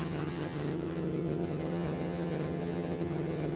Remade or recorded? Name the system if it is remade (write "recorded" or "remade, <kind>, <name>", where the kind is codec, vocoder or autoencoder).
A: remade, vocoder, HiFi-GAN